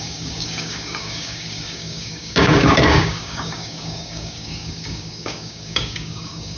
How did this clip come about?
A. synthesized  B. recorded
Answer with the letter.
A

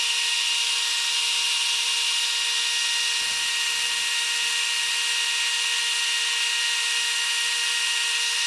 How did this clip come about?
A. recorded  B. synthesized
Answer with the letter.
A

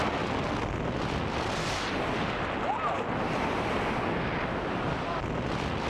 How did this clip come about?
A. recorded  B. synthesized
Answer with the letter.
A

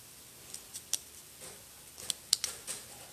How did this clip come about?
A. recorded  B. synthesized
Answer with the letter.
A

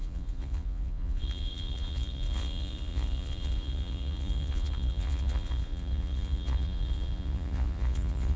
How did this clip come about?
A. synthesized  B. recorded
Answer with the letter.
A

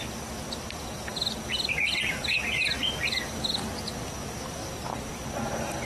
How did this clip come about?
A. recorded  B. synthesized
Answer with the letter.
A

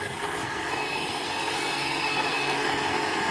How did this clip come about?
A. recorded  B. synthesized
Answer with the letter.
B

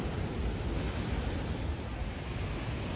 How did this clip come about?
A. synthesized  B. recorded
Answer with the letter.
B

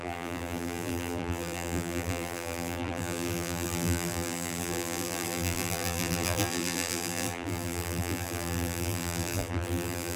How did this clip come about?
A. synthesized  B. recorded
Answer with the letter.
A